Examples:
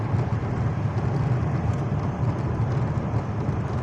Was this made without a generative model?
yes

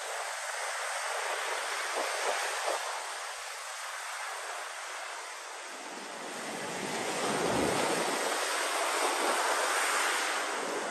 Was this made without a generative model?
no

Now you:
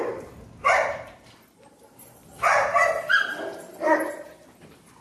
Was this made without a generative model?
yes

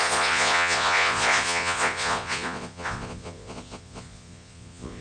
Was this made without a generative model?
no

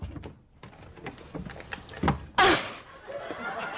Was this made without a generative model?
yes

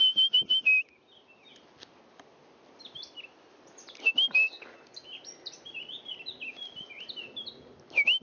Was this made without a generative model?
yes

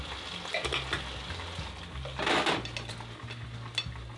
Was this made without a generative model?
yes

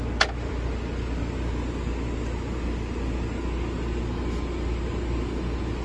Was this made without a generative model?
yes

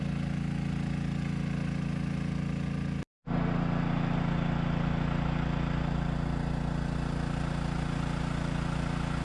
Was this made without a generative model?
yes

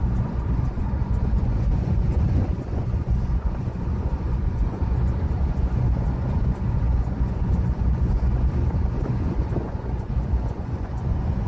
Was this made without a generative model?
no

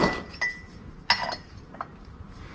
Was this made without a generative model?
yes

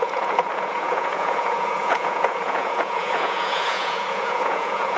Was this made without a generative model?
no